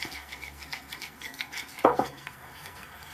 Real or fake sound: fake